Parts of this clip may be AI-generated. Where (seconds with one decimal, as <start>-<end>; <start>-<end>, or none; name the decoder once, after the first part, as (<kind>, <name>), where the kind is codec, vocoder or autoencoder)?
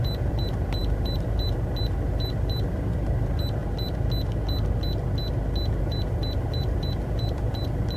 0.0-3.6 (vocoder, BigVGAN v2); 5.8-8.0